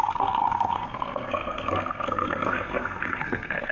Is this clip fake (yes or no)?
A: yes